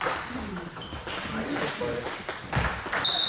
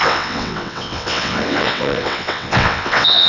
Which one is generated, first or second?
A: second